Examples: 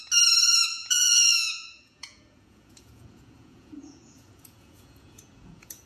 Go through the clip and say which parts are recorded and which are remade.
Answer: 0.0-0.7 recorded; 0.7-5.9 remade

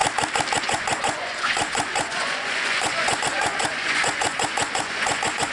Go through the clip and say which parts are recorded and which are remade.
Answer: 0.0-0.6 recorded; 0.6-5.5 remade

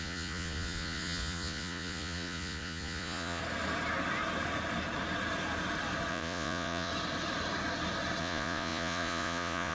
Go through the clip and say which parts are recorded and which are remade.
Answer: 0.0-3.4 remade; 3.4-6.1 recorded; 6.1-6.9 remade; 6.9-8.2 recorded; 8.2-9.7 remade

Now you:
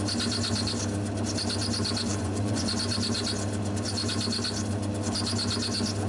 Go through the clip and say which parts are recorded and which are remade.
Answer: 0.0-2.1 recorded; 2.1-2.7 remade; 2.7-6.1 recorded

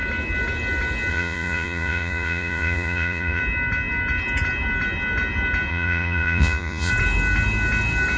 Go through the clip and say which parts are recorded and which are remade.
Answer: 0.0-1.1 recorded; 1.1-3.4 remade; 3.4-5.7 recorded; 5.7-6.9 remade; 6.9-8.2 recorded

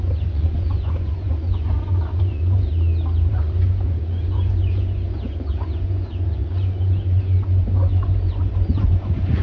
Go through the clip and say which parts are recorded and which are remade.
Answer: 0.0-2.7 remade; 2.7-3.3 recorded; 3.3-9.4 remade

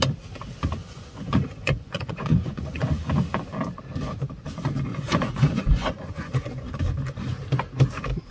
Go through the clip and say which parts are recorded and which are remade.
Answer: 0.0-0.8 recorded; 0.8-3.1 remade; 3.1-4.9 recorded; 4.9-6.8 remade; 6.8-8.3 recorded